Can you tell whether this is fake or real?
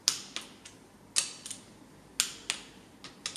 real